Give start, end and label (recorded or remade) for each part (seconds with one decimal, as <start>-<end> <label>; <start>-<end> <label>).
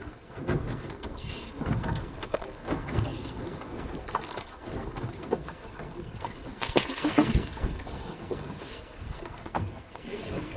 0.0-10.6 remade